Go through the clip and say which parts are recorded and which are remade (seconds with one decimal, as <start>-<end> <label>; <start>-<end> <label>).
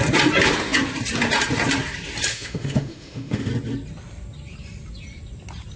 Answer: 0.0-2.3 recorded; 2.3-3.5 remade; 3.5-5.8 recorded